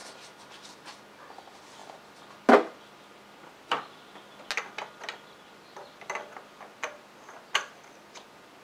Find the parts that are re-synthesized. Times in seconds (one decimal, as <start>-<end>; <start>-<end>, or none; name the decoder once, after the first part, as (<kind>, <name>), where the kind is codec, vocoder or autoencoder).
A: none